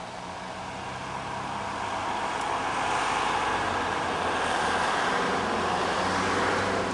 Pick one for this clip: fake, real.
real